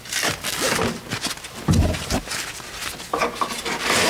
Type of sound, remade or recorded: recorded